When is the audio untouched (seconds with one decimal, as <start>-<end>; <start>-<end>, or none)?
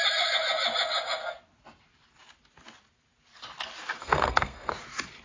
0.0-4.0; 4.7-5.2